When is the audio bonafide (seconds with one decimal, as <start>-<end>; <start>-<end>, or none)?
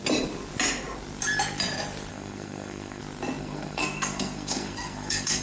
0.0-2.1; 3.0-3.4